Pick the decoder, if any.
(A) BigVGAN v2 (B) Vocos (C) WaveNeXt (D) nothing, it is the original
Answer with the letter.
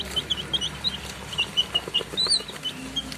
D